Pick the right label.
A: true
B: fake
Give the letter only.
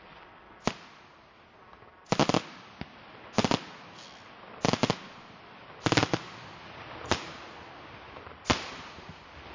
A